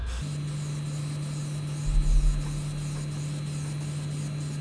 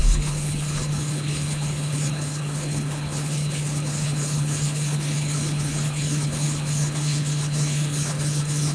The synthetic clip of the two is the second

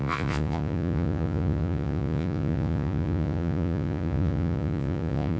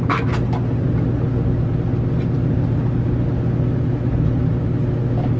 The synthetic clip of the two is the first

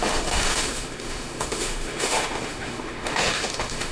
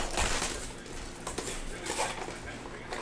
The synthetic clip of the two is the first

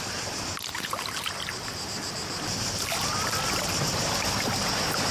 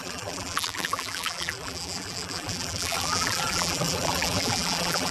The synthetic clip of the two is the second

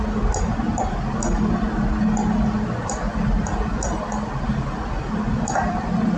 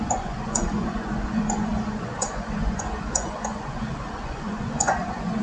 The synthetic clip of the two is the second